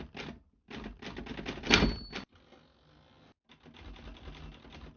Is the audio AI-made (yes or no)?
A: no